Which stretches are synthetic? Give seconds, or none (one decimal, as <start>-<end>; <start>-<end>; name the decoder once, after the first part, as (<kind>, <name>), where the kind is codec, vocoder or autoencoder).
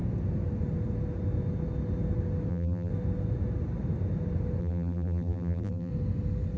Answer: 2.5-2.9 (vocoder, BigVGAN v2); 4.6-5.9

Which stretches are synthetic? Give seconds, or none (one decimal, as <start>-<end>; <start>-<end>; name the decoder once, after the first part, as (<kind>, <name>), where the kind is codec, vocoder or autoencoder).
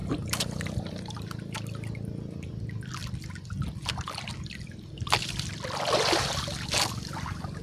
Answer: 0.0-1.4 (vocoder, BigVGAN v2)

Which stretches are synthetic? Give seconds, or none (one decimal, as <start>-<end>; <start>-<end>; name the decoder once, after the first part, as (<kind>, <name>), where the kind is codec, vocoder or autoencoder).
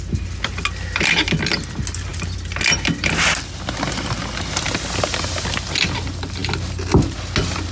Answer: none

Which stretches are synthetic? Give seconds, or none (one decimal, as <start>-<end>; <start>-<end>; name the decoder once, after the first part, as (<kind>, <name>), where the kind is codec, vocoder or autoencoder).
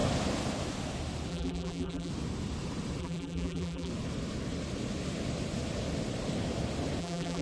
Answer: 1.3-2.1 (vocoder, BigVGAN v2); 3.0-3.9; 7.0-7.4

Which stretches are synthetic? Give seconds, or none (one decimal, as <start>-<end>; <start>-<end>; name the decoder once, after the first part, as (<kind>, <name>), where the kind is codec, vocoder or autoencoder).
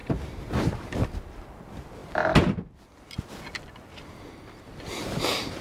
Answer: 0.0-1.6 (vocoder, BigVGAN v2); 4.9-5.6